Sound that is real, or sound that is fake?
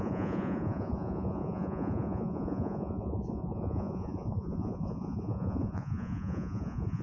fake